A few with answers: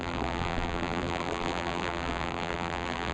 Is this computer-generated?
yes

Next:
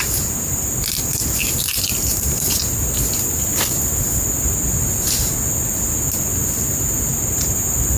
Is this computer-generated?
no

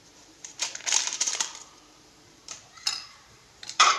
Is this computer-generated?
yes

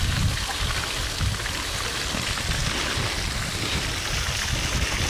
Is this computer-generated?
no